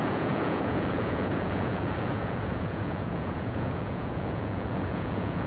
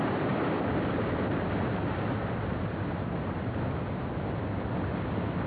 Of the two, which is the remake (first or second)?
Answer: first